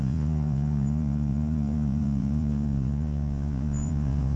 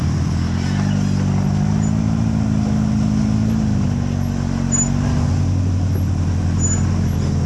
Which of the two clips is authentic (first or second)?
second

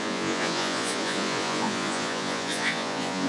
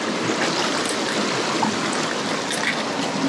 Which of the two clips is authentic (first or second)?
second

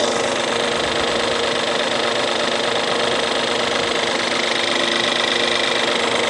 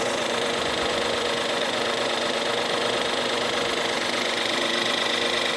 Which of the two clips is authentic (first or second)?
first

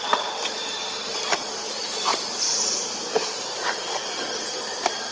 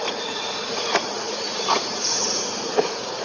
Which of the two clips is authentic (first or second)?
first